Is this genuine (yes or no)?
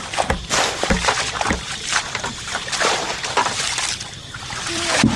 no